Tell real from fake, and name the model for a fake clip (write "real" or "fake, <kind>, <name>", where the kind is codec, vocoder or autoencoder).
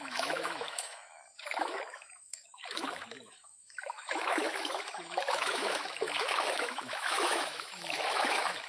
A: fake, autoencoder, DAC-VAE